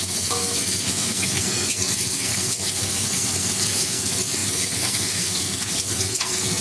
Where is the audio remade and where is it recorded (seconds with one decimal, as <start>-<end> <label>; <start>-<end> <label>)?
0.0-6.6 remade